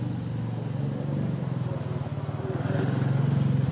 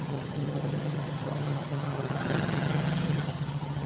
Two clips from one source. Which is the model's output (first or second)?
second